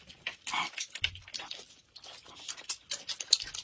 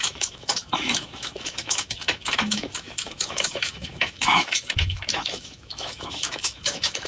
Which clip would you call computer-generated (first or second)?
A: second